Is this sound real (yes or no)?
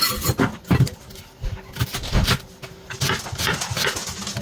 yes